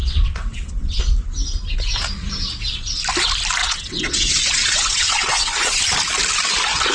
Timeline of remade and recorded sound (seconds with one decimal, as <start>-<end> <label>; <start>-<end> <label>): 0.0-1.0 remade; 1.0-3.6 recorded; 3.6-5.8 remade; 5.8-6.9 recorded